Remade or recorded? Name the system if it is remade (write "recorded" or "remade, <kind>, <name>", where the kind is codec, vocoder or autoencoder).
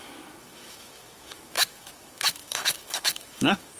remade, autoencoder, DAC-VAE